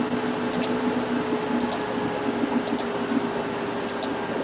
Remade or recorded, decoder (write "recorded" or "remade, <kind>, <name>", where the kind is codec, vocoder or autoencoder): recorded